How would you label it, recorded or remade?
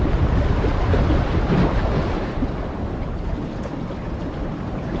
recorded